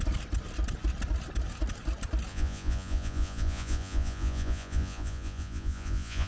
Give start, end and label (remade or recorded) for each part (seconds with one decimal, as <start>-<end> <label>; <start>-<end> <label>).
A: 0.0-2.3 recorded; 2.3-6.3 remade